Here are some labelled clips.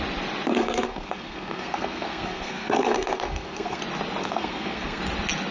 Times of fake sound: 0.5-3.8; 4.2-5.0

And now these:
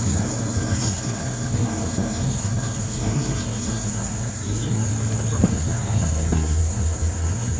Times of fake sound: 0.0-4.9; 5.5-7.6

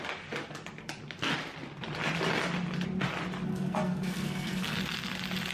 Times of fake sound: 3.5-4.8

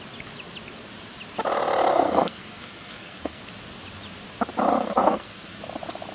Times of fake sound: 1.9-3.4; 4.7-5.6